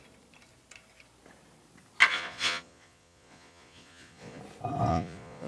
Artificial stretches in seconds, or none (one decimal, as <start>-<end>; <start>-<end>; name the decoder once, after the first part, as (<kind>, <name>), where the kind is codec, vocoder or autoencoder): 2.1-4.4 (vocoder, Vocos); 4.9-5.5